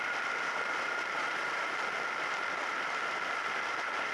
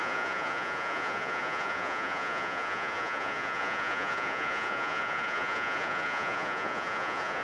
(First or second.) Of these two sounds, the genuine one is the first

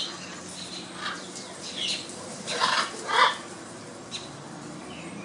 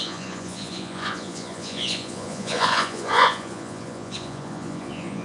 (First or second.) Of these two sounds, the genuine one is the first